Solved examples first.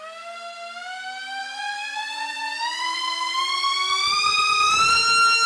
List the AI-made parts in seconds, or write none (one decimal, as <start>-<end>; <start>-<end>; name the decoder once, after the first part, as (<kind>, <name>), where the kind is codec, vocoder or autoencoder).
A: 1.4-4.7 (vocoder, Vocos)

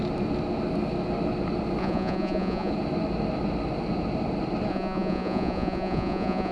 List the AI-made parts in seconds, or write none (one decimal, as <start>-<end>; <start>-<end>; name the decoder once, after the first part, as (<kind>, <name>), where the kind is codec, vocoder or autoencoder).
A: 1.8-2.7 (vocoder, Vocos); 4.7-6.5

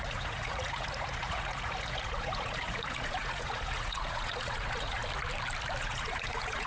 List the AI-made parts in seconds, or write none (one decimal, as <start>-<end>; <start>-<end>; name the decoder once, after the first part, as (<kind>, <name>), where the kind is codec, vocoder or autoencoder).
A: 0.0-5.0 (vocoder, Vocos); 5.8-6.7

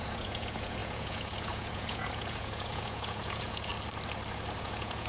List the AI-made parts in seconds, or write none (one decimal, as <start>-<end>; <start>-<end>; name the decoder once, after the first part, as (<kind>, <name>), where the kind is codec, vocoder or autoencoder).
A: 0.0-3.7 (vocoder, Vocos); 4.6-5.1

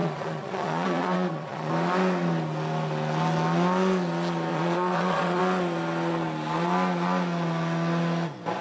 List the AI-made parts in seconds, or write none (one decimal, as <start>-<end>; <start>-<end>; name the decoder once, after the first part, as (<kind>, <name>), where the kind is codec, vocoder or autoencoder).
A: 0.0-1.7 (vocoder, Vocos); 4.5-5.4

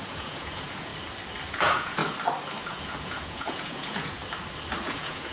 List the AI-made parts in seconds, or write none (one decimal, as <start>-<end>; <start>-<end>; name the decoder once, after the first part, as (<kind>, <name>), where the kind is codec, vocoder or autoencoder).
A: 0.0-0.9 (vocoder, Vocos); 1.5-2.0; 2.6-4.2; 4.8-5.3

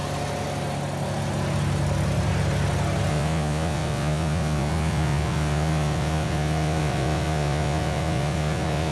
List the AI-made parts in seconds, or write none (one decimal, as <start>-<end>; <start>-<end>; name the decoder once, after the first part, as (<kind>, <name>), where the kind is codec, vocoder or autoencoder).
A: 3.1-8.9 (vocoder, Vocos)